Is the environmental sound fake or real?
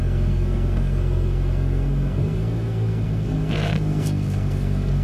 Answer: fake